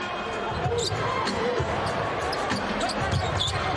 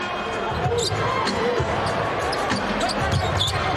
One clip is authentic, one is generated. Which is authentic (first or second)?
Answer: second